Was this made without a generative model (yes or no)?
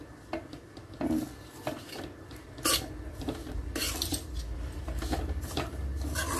yes